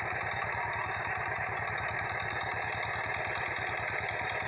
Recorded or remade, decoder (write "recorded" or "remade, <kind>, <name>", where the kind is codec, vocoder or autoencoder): recorded